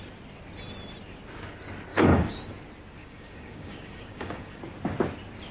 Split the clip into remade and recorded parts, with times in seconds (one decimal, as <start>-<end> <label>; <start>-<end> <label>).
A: 0.0-1.9 recorded; 1.9-2.5 remade; 2.5-3.0 recorded; 3.0-4.6 remade; 4.6-5.5 recorded